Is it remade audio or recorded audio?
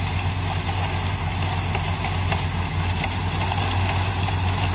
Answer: recorded